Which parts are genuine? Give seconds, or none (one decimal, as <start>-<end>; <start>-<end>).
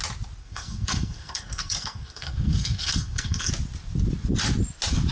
0.0-0.4; 3.5-5.1